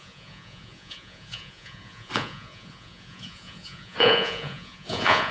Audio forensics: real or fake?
fake